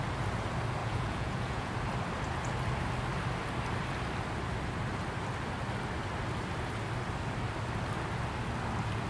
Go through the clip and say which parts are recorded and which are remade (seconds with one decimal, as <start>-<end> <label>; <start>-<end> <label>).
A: 0.0-0.8 recorded; 0.8-1.7 remade; 1.7-9.1 recorded